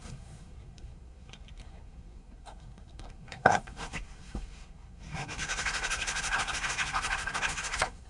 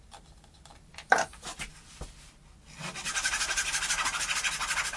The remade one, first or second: first